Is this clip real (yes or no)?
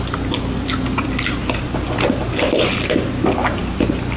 yes